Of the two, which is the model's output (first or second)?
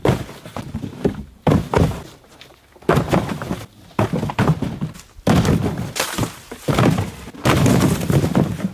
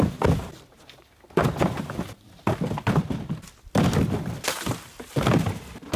second